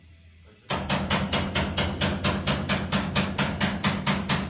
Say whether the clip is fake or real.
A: real